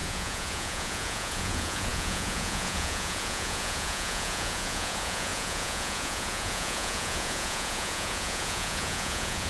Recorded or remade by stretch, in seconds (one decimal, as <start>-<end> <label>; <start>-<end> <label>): 0.0-9.5 remade